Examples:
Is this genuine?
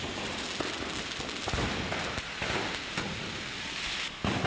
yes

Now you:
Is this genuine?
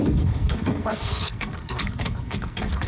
no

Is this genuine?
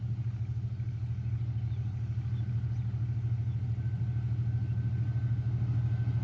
yes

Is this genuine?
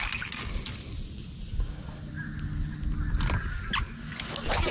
yes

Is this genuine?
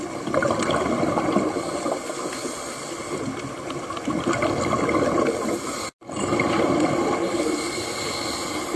yes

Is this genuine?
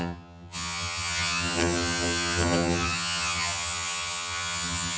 no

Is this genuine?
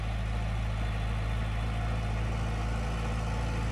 yes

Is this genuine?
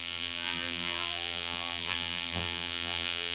no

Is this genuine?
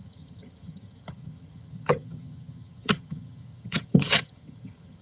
no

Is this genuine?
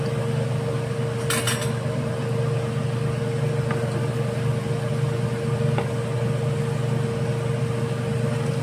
yes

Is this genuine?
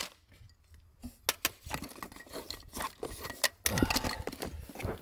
yes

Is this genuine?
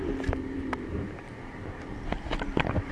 yes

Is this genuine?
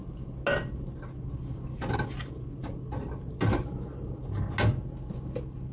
yes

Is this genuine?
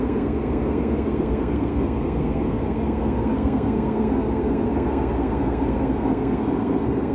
no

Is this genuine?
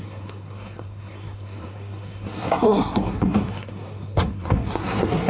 no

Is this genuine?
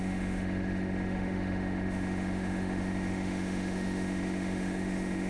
no